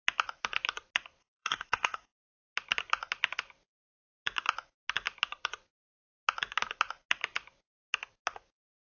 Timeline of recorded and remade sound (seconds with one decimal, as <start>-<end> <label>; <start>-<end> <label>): 0.0-1.2 recorded; 1.2-2.2 remade; 2.2-8.9 recorded